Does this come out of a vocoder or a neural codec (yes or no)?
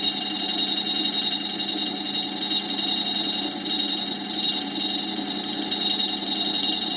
no